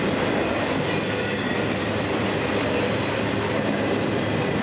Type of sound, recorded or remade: recorded